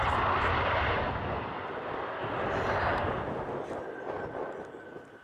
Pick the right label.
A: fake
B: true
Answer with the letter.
B